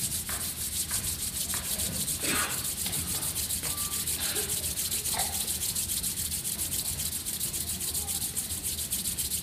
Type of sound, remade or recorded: recorded